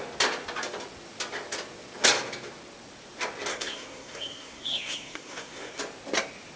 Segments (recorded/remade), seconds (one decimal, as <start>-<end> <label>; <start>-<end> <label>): 0.0-3.5 recorded; 3.5-5.8 remade; 5.8-6.6 recorded